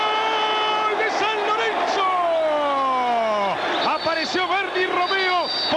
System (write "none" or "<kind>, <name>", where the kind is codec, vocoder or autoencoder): none